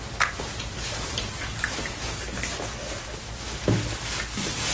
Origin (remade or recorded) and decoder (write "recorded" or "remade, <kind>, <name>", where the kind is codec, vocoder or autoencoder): recorded